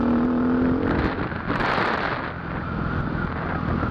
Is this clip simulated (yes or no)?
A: no